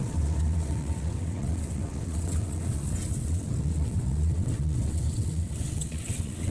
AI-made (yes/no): yes